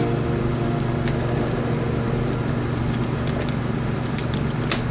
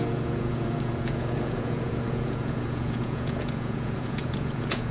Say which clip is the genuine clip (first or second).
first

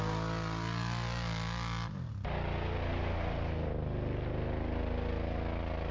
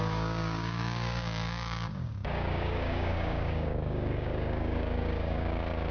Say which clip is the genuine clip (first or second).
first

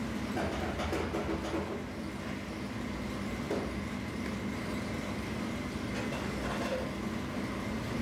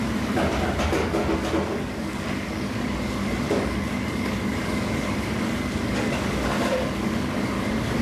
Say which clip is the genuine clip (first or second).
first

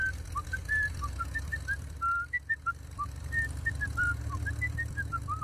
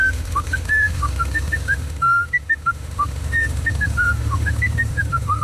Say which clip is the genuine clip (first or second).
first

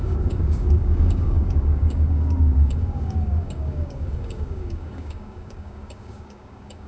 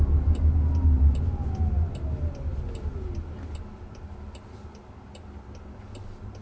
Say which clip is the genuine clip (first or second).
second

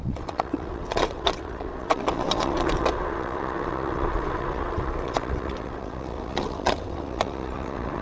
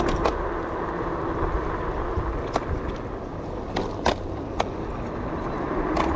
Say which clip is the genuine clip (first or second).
second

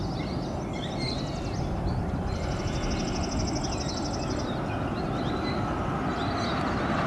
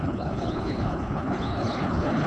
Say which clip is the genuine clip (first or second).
first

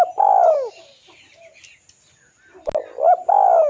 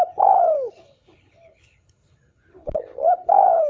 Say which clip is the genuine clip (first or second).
first